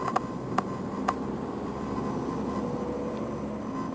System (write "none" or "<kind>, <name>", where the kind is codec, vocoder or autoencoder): none